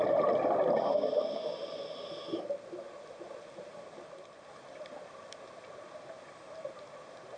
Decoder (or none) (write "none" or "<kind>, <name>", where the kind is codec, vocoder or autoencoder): none